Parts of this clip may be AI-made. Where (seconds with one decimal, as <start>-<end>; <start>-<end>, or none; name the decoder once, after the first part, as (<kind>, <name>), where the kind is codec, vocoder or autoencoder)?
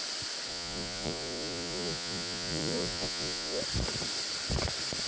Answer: 0.5-3.6 (vocoder, Vocos)